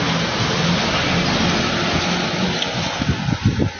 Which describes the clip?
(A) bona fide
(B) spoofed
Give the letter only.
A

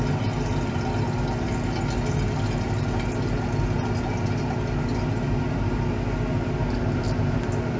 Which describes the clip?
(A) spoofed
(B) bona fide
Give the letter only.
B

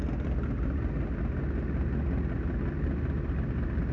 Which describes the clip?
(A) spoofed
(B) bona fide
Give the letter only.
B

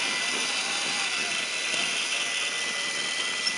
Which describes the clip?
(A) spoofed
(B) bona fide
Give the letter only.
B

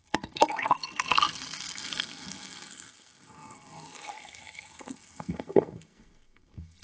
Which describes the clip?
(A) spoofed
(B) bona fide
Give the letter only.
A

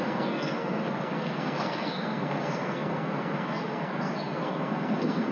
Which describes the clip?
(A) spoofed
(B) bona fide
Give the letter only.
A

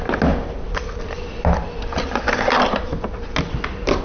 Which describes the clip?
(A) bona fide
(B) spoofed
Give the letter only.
A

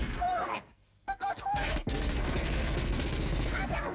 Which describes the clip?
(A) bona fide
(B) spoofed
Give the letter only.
B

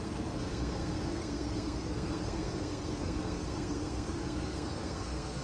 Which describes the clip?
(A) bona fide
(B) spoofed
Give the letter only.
B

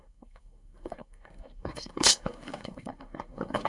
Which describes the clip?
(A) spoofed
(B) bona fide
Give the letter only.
A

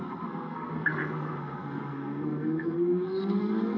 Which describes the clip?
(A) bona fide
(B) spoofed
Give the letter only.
B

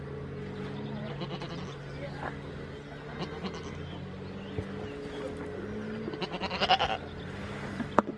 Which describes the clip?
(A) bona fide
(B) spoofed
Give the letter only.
A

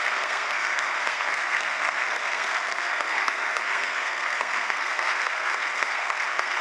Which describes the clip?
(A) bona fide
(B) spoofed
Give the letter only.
B